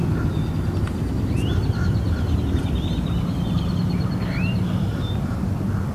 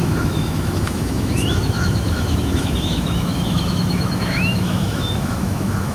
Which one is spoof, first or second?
second